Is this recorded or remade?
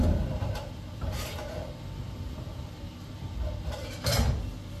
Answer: remade